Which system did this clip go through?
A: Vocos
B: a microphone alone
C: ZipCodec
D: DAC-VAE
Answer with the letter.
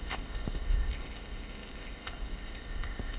C